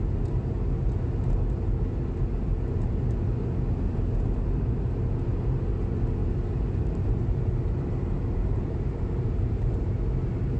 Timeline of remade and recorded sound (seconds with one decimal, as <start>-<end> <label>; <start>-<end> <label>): 0.0-6.2 recorded; 6.2-9.9 remade; 9.9-10.6 recorded